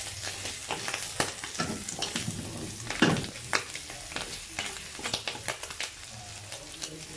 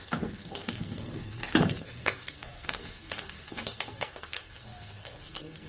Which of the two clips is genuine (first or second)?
first